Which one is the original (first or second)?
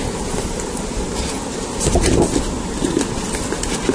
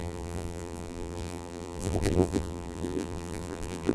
first